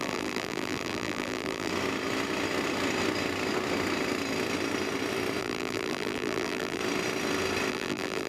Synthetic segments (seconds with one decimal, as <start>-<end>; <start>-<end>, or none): 0.0-1.7; 5.4-6.8; 7.7-8.3